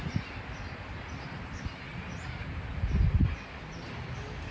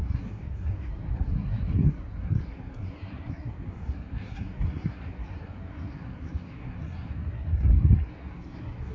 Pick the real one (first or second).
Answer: first